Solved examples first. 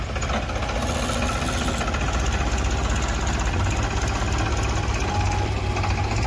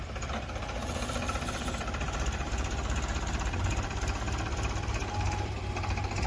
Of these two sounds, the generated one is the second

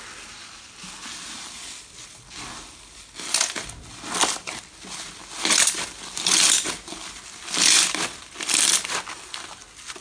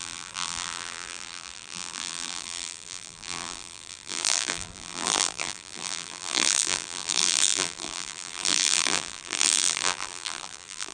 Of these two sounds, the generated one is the second